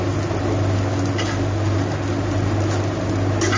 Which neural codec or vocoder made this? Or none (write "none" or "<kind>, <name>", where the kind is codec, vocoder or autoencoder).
none